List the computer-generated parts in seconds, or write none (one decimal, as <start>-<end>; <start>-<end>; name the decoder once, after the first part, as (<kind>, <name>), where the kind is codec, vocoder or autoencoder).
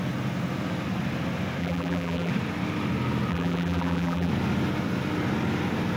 1.6-2.3 (vocoder, BigVGAN v2); 3.3-4.3